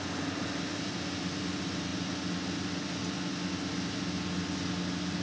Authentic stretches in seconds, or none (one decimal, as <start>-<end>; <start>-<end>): 0.0-5.2